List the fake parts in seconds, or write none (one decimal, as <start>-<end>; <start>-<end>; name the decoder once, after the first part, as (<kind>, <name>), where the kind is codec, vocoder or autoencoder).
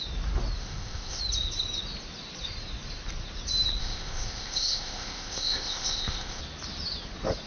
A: 0.6-1.2 (codec, ZipCodec); 3.8-6.4